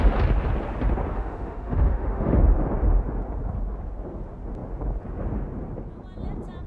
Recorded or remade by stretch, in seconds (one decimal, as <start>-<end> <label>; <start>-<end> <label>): 0.0-1.1 recorded; 1.1-2.4 remade; 2.4-6.7 recorded

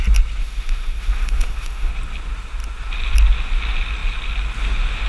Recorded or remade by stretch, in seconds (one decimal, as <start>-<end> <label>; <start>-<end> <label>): 0.0-0.4 recorded; 0.4-1.9 remade; 1.9-5.1 recorded

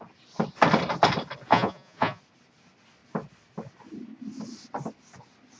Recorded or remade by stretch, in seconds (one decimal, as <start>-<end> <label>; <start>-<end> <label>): 0.0-1.5 recorded; 1.5-2.2 remade; 2.2-5.6 recorded

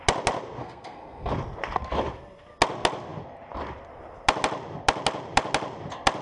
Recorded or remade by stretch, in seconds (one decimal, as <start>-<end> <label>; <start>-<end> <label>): 0.0-0.6 recorded; 0.6-1.3 remade; 1.3-6.2 recorded

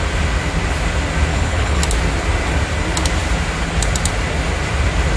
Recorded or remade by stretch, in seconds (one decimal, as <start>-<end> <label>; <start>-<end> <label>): 0.0-1.3 recorded; 1.3-1.8 remade; 1.8-5.2 recorded

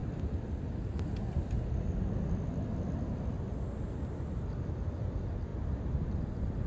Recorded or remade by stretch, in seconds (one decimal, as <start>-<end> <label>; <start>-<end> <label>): 0.0-4.0 recorded; 4.0-6.7 remade

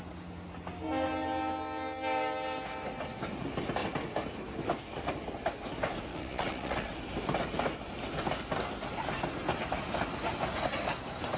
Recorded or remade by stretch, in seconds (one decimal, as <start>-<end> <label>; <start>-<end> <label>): 0.0-6.1 recorded; 6.1-6.9 remade; 6.9-11.4 recorded

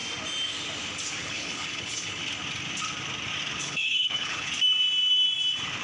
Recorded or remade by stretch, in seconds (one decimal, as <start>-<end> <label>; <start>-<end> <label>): 0.0-1.2 recorded; 1.2-2.2 remade; 2.2-3.6 recorded; 3.6-4.5 remade; 4.5-5.8 recorded